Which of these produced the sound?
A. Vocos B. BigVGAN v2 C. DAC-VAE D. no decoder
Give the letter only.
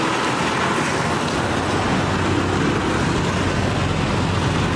D